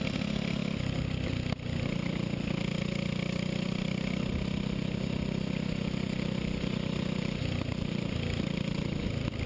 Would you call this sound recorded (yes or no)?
yes